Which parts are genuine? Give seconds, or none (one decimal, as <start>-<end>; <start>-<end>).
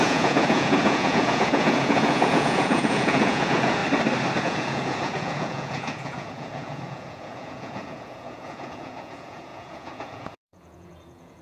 3.8-4.4